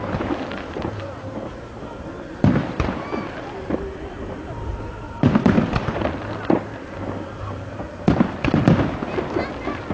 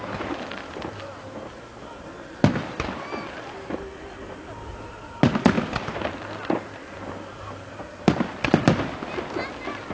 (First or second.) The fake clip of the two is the first